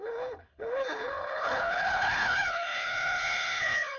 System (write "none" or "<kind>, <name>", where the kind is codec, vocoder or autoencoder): codec, HILCodec